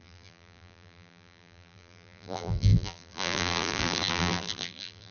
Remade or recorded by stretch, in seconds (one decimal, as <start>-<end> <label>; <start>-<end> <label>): 0.0-5.1 remade

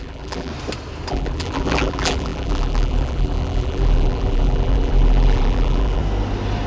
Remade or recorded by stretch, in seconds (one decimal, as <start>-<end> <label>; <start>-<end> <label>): 0.0-0.5 remade; 0.5-1.1 recorded; 1.1-6.0 remade; 6.0-6.7 recorded

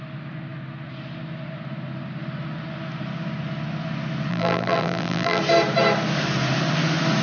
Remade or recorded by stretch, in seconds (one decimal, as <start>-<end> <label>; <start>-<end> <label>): 0.0-4.3 recorded; 4.3-5.4 remade; 5.4-7.2 recorded

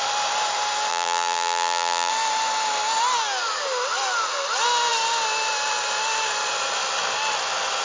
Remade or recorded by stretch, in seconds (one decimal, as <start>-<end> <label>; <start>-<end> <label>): 0.0-0.9 recorded; 0.9-2.1 remade; 2.1-7.8 recorded

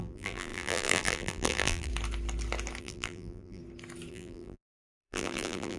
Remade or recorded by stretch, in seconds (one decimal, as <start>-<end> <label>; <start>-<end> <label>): 0.0-1.9 remade; 1.9-2.8 recorded; 2.8-3.6 remade; 3.6-4.1 recorded; 4.1-5.8 remade

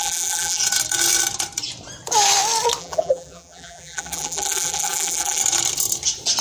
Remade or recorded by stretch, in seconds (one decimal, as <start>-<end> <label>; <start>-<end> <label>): 0.0-0.6 remade; 0.6-2.8 recorded; 2.8-5.4 remade; 5.4-6.4 recorded

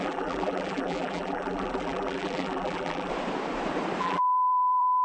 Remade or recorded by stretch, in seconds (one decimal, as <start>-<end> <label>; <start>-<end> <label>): 0.0-3.1 remade; 3.1-4.0 recorded; 4.0-5.0 remade